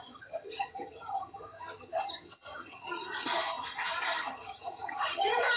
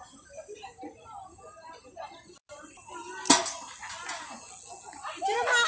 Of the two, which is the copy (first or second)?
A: first